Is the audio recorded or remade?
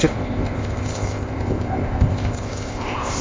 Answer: remade